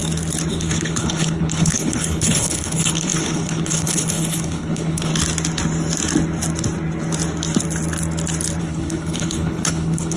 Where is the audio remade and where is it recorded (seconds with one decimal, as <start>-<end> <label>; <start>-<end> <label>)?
0.0-0.5 recorded; 0.5-5.1 remade; 5.1-8.6 recorded; 8.6-10.2 remade